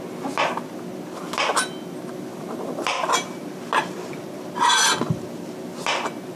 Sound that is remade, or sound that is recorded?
recorded